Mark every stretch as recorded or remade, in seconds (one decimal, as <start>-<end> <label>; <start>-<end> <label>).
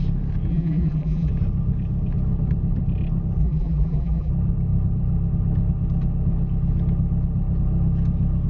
0.0-0.5 recorded; 0.5-1.3 remade; 1.3-3.4 recorded; 3.4-4.3 remade; 4.3-8.5 recorded